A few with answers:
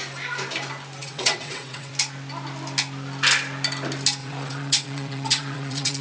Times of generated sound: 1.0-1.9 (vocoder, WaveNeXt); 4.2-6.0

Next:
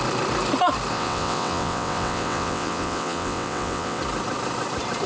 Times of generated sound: 0.9-4.0 (vocoder, WaveNeXt)

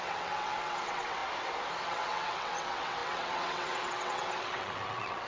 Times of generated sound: 0.0-1.2 (vocoder, WaveNeXt); 1.8-5.3

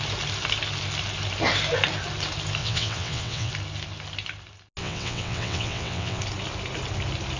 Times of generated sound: 2.6-3.5 (vocoder, WaveNeXt); 4.8-6.2

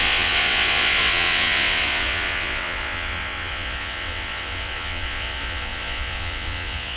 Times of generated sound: 0.0-7.0 (vocoder, WaveNeXt)

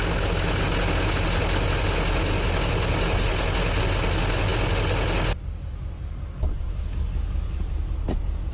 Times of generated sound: none

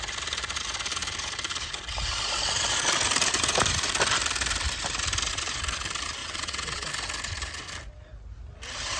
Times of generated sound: 6.2-6.9 (vocoder, WaveNeXt)

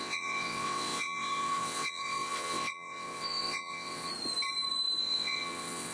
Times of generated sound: 0.0-4.1 (vocoder, WaveNeXt); 5.0-5.9